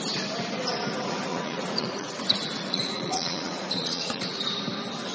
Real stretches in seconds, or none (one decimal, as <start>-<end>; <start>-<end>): 0.0-1.3; 4.4-5.1